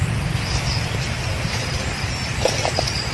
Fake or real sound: real